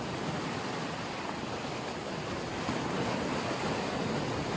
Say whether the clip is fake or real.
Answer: real